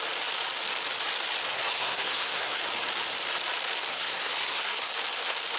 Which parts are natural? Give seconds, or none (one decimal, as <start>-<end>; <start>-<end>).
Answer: 0.0-1.5; 2.6-3.9; 4.9-5.6